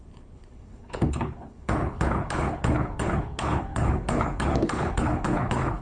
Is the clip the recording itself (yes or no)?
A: no